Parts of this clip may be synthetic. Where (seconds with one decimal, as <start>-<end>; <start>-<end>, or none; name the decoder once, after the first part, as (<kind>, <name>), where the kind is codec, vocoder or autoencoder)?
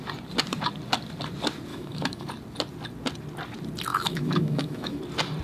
1.7-2.3 (autoencoder, DAC-VAE); 3.9-5.0